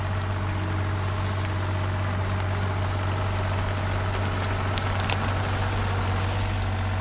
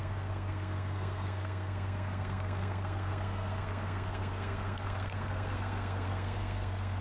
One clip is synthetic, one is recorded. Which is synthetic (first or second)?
second